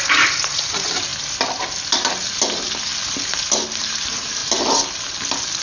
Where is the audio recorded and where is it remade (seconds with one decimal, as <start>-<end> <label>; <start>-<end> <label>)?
0.0-1.1 remade; 1.1-3.8 recorded; 3.8-4.4 remade; 4.4-5.6 recorded